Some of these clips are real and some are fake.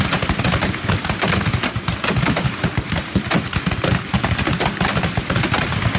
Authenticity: real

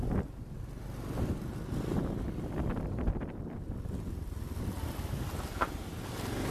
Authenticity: real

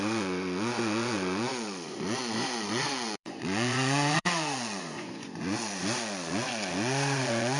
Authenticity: fake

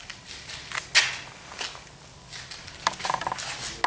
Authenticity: real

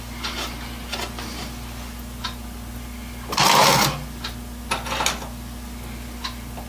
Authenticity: real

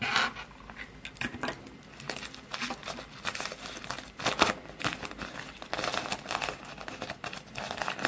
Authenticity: real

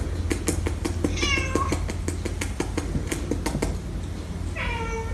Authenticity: real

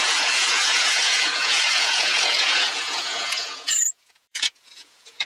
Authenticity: fake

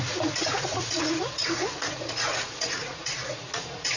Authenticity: fake